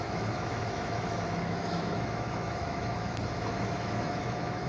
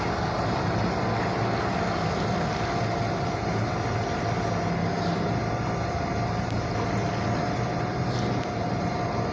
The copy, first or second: first